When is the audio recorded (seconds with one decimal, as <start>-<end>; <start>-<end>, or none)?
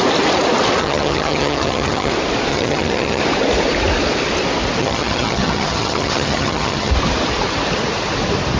0.0-0.8; 2.1-2.5; 3.2-4.8; 6.9-8.6